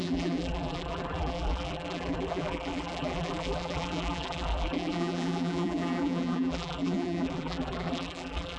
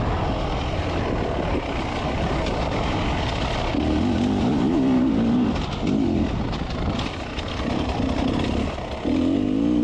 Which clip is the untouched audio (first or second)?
second